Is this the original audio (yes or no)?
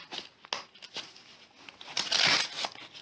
yes